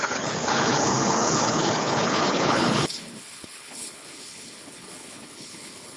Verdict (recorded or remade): remade